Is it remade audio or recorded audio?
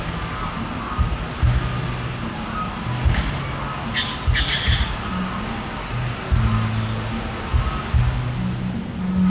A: recorded